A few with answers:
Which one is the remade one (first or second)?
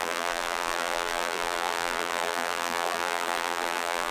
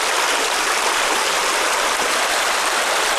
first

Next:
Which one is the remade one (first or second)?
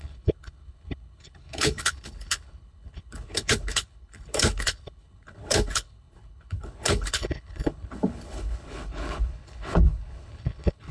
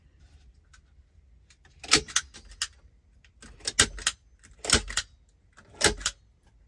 first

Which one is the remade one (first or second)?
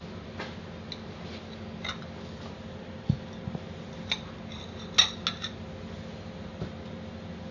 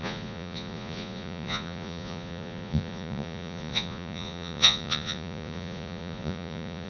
second